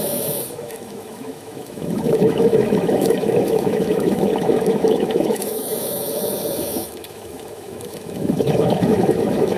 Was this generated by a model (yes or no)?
yes